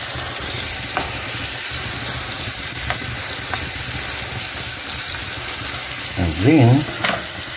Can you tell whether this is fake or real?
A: real